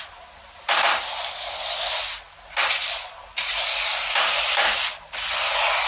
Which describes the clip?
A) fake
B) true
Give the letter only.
B